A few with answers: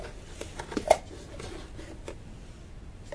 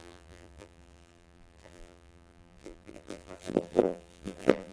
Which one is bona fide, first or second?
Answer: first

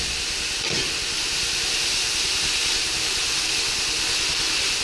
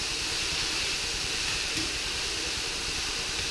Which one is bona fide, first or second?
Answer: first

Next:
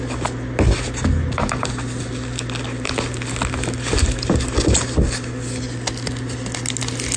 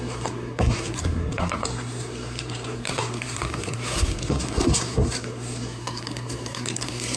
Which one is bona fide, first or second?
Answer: first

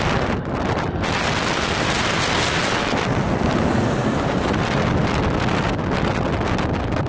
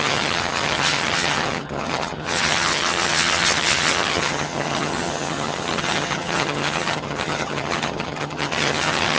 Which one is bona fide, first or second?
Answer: first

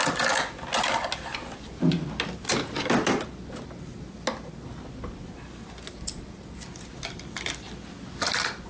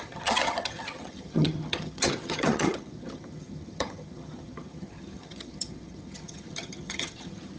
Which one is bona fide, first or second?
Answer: first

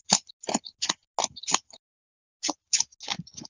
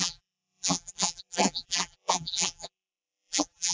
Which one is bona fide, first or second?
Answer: first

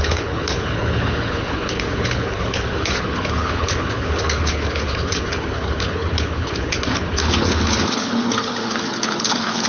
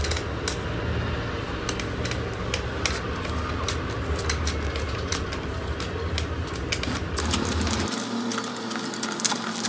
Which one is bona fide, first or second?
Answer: second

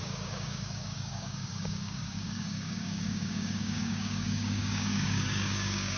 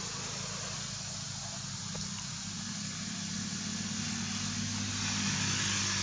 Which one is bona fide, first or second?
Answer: second